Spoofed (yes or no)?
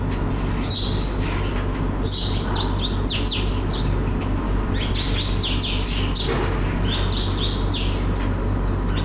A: no